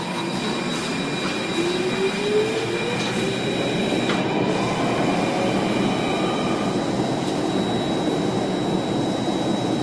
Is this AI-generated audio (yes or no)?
no